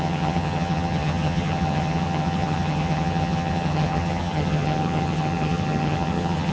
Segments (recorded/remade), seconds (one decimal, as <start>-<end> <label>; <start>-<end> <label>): 0.0-6.5 remade